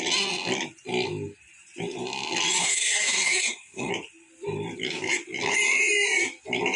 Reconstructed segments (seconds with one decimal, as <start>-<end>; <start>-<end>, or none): 2.6-3.9